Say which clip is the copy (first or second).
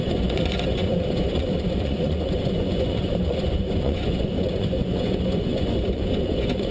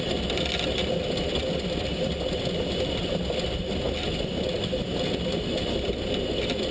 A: first